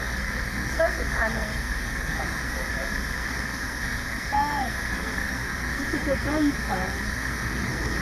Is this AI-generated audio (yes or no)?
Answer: yes